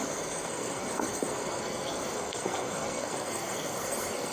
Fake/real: fake